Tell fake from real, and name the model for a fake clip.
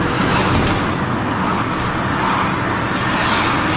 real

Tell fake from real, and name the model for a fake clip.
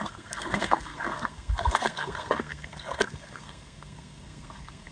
fake, codec, SNAC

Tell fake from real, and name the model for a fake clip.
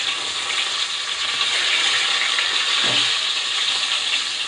real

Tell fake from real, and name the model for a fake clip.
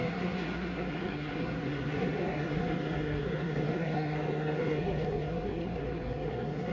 fake, codec, SNAC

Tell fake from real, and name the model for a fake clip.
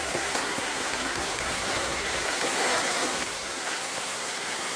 fake, codec, SNAC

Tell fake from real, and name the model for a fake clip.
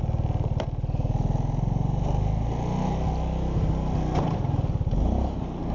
real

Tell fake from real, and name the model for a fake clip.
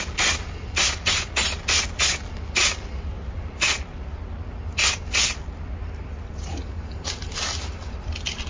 real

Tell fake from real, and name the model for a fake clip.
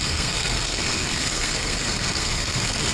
fake, codec, SNAC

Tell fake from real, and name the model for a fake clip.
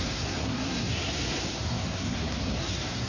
fake, codec, SNAC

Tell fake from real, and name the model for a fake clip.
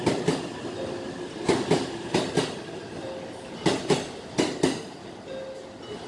real